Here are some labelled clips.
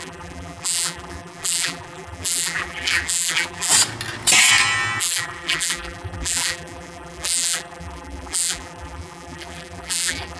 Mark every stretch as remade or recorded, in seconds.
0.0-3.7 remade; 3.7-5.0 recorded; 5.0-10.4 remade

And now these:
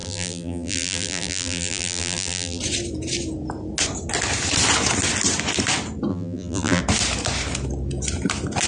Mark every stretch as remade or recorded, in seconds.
0.0-2.6 remade; 2.6-6.1 recorded; 6.1-6.8 remade; 6.8-8.7 recorded

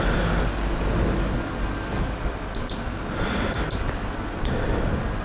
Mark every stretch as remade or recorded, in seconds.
0.0-1.9 recorded; 1.9-5.2 remade

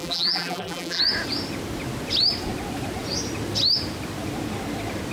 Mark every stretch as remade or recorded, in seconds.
0.0-1.0 remade; 1.0-5.1 recorded

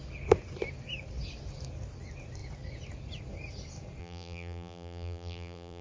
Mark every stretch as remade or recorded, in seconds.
0.0-4.0 recorded; 4.0-5.8 remade

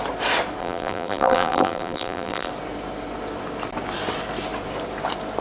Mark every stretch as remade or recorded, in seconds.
0.0-0.6 recorded; 0.6-2.5 remade; 2.5-5.4 recorded

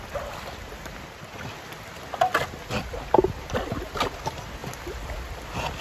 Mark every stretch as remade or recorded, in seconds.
0.0-5.8 recorded

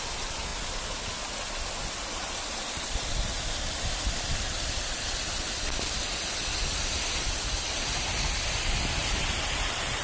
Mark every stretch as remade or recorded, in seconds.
0.0-9.0 recorded; 9.0-10.0 remade